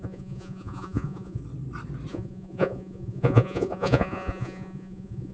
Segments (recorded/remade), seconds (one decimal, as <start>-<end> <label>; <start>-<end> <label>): 0.0-1.4 remade; 1.4-2.1 recorded; 2.1-5.3 remade